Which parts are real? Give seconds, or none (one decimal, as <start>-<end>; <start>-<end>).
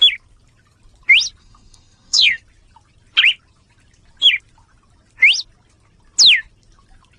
0.0-1.4; 2.4-7.2